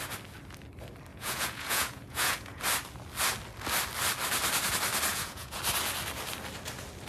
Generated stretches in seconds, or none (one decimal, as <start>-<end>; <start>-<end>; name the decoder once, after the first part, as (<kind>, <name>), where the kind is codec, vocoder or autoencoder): 1.1-2.6 (vocoder, Vocos); 5.1-5.6